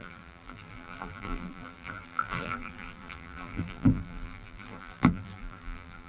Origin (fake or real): fake